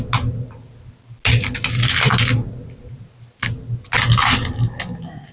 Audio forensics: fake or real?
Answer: real